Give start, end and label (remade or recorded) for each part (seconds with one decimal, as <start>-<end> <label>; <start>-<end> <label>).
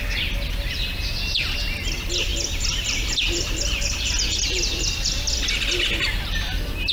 0.0-2.3 recorded; 2.3-5.4 remade; 5.4-6.9 recorded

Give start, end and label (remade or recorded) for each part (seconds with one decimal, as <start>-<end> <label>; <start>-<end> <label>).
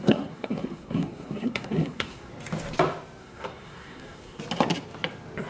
0.0-2.3 remade; 2.3-3.2 recorded; 3.2-4.4 remade; 4.4-5.5 recorded